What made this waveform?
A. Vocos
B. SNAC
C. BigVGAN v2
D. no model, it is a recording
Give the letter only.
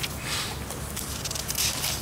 D